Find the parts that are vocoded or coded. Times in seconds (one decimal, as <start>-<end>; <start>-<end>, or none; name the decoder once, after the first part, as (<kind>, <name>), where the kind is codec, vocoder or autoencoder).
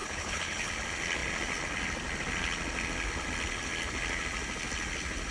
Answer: 0.0-0.7 (codec, HILCodec)